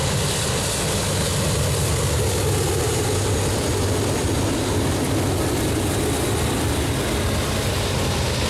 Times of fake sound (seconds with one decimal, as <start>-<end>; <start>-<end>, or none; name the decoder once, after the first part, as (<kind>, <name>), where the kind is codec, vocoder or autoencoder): none